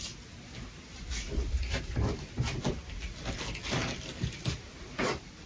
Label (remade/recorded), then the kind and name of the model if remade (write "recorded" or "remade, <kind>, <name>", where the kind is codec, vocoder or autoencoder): recorded